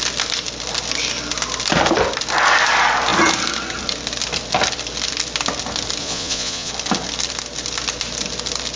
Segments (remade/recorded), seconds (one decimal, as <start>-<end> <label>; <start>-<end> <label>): 0.0-6.0 recorded; 6.0-6.7 remade; 6.7-8.8 recorded

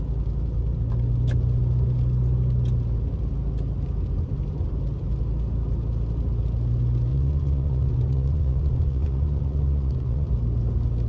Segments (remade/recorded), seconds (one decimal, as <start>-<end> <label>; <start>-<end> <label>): 0.0-7.1 recorded; 7.1-10.3 remade; 10.3-11.1 recorded

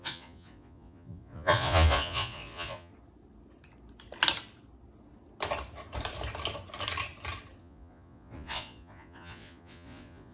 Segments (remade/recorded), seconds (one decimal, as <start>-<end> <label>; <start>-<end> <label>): 0.0-2.9 remade; 2.9-7.6 recorded; 7.6-10.3 remade

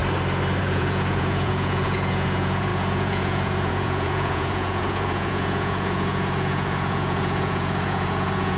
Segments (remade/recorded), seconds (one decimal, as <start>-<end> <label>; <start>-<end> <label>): 0.0-0.6 recorded; 0.6-8.6 remade